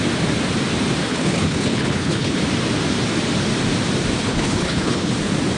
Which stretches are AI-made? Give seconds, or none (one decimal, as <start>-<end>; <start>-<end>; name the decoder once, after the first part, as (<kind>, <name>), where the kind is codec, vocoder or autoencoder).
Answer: 1.1-2.4 (codec, HILCodec); 4.2-5.1